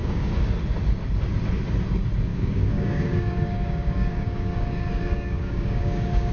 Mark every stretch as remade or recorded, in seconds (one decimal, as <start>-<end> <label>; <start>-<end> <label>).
0.0-0.5 remade; 0.5-2.3 recorded; 2.3-6.3 remade